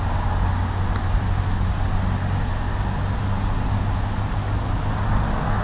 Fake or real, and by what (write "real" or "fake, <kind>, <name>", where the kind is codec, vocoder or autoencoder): real